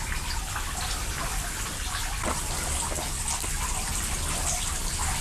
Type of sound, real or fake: real